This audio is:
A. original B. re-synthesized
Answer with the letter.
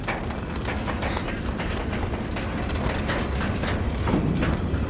A